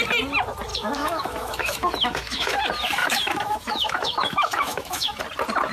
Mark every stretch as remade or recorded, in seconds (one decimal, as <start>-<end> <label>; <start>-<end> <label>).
0.0-0.7 recorded; 0.7-2.6 remade; 2.6-3.0 recorded; 3.0-5.2 remade; 5.2-5.7 recorded